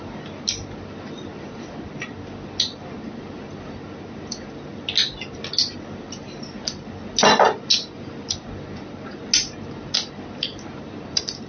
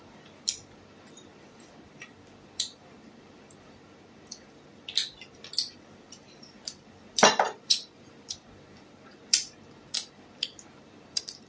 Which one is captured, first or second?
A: first